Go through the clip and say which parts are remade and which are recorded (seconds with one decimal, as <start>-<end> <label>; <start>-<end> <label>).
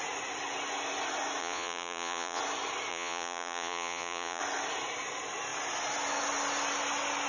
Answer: 0.0-1.4 recorded; 1.4-2.4 remade; 2.4-2.9 recorded; 2.9-4.4 remade; 4.4-7.3 recorded